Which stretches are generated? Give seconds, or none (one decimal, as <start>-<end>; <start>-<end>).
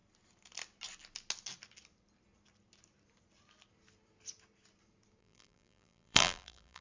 5.2-6.8